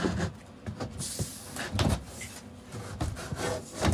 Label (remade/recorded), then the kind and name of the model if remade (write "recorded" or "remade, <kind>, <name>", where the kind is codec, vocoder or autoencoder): remade, vocoder, BigVGAN v2